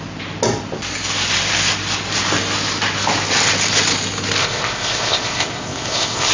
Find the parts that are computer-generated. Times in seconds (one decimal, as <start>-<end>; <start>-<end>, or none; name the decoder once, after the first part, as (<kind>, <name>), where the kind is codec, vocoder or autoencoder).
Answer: 4.4-6.3 (codec, ZipCodec)